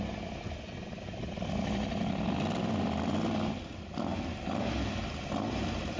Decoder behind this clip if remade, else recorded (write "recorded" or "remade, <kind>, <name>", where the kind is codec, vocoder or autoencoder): recorded